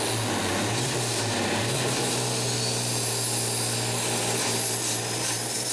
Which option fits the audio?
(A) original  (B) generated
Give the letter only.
A